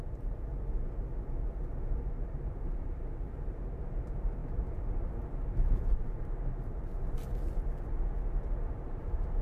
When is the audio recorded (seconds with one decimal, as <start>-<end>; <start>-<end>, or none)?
0.5-2.0; 7.2-8.7